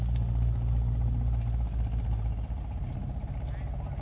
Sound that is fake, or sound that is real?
real